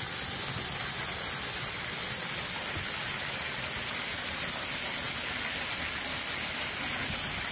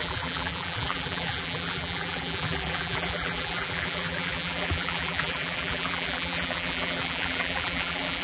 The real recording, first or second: first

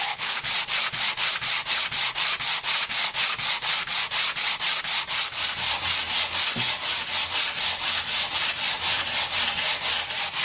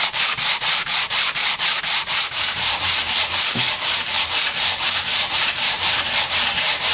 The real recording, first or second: first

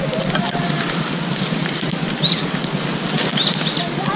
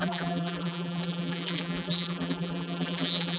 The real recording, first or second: first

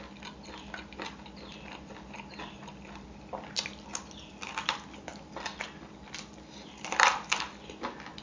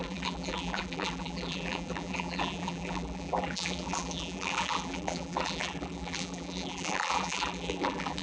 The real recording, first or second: first